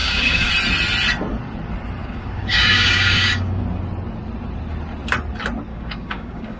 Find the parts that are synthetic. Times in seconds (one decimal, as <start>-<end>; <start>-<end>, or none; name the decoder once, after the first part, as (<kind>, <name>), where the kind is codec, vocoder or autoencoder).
0.0-0.5 (codec, DAC); 2.0-3.6; 5.7-6.6

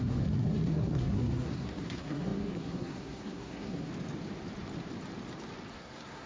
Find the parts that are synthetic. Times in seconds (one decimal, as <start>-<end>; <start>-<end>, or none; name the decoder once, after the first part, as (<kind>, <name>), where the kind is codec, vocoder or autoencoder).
0.0-3.9 (codec, SNAC); 5.7-6.3

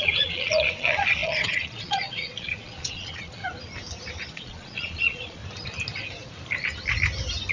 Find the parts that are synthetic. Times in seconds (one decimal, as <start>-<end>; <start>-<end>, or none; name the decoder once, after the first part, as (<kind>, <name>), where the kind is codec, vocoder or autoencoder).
0.0-3.4 (vocoder, Vocos); 4.3-5.4

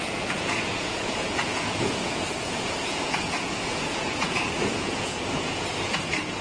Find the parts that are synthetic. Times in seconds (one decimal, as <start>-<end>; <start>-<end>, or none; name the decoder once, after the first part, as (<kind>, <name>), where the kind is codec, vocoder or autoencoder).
0.0-6.4 (vocoder, Vocos)